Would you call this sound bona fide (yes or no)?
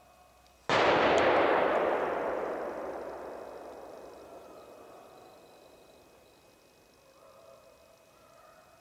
yes